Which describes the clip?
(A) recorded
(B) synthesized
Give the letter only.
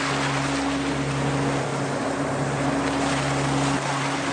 A